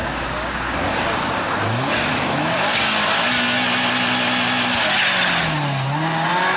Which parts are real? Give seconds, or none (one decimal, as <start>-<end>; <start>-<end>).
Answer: 0.0-6.6